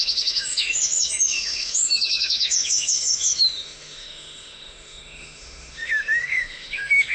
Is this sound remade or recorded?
remade